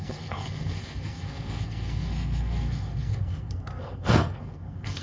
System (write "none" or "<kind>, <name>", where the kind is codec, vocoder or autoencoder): codec, SNAC